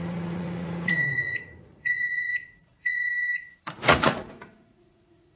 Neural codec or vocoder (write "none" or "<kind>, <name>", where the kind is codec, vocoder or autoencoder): vocoder, Vocos